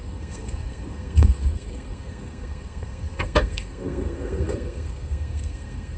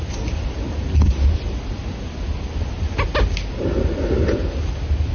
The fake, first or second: first